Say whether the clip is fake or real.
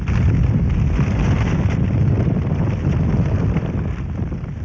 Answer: real